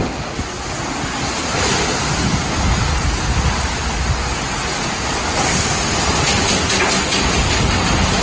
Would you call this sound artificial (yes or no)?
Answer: no